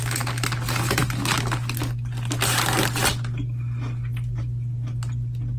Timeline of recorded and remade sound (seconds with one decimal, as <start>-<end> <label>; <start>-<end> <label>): 0.0-5.6 recorded